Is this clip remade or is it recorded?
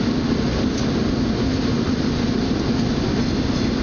recorded